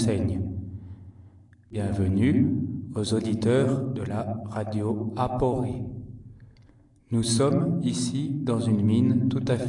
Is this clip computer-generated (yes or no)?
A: no